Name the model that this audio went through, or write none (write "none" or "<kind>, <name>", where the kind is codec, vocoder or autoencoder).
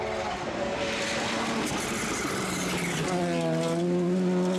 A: none